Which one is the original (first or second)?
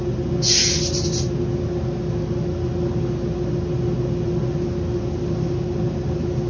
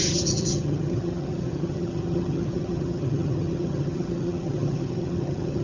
first